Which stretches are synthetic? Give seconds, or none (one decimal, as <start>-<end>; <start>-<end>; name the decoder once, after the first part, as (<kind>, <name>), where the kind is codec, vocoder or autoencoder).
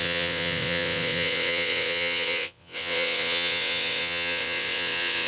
0.0-5.3 (vocoder, WaveNeXt)